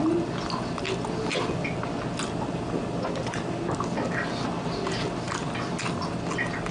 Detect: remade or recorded recorded